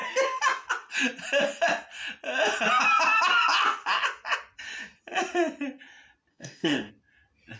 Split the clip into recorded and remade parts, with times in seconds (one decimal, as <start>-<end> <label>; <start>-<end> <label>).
0.0-6.3 recorded; 6.3-6.9 remade; 6.9-7.6 recorded